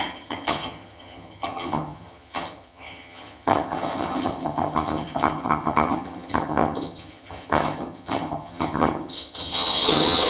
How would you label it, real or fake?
fake